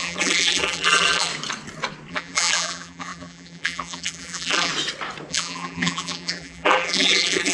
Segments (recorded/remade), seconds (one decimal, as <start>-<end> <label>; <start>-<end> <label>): 0.0-1.3 remade; 1.3-2.1 recorded; 2.1-4.7 remade; 4.7-5.3 recorded; 5.3-7.5 remade